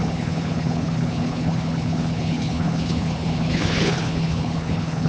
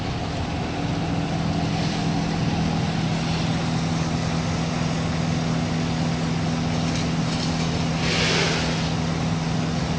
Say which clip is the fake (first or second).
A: first